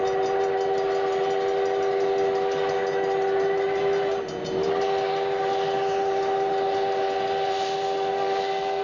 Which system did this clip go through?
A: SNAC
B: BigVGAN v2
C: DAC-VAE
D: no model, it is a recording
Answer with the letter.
D